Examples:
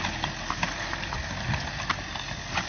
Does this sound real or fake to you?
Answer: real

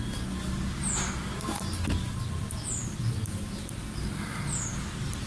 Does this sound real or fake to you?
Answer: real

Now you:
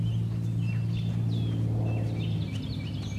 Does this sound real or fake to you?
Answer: real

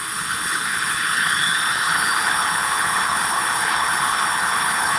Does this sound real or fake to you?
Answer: fake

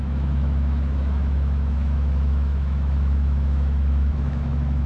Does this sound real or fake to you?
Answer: fake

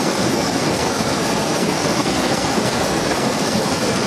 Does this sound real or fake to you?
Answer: fake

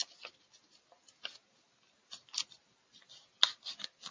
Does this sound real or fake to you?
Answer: real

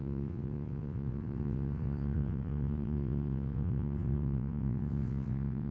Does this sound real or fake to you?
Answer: fake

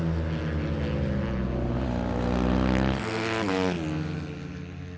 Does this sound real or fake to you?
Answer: real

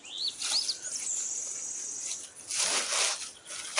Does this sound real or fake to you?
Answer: real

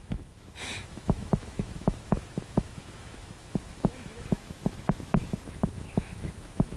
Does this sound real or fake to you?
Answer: fake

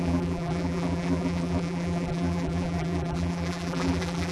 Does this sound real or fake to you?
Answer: fake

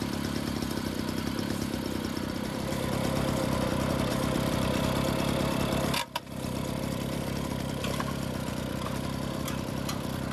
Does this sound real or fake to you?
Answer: fake